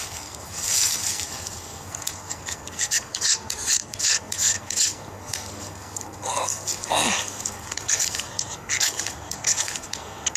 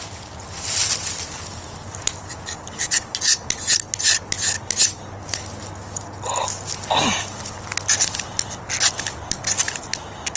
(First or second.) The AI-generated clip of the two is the first